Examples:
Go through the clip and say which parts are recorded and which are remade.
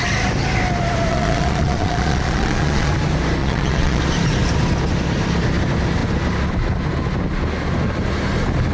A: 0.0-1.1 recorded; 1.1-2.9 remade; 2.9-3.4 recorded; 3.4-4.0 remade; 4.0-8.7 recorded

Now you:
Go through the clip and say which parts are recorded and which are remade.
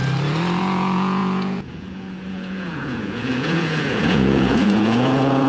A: 0.0-0.6 recorded; 0.6-5.5 remade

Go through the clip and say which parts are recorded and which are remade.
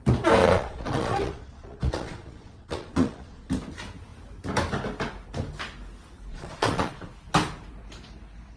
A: 0.0-0.4 recorded; 0.4-3.5 remade; 3.5-6.3 recorded; 6.3-7.1 remade; 7.1-8.6 recorded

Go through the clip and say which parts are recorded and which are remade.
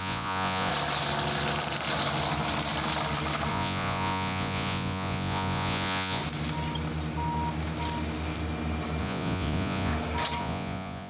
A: 0.0-0.7 remade; 0.7-3.5 recorded; 3.5-6.2 remade; 6.2-9.0 recorded; 9.0-9.9 remade; 9.9-10.4 recorded; 10.4-11.1 remade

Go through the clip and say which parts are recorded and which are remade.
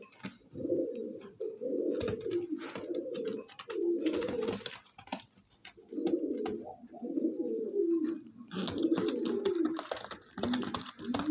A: 0.0-11.3 recorded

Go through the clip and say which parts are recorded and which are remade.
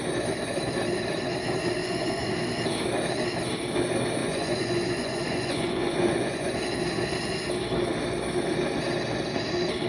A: 0.0-1.8 recorded; 1.8-2.3 remade; 2.3-4.2 recorded; 4.2-6.6 remade; 6.6-9.9 recorded